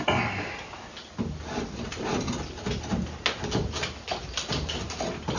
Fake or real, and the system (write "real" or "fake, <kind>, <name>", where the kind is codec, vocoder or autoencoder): real